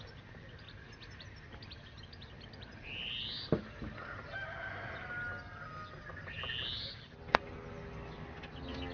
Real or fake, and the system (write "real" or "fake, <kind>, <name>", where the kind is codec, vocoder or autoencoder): real